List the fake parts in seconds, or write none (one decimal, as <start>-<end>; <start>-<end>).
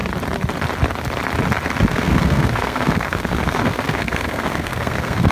1.9-5.3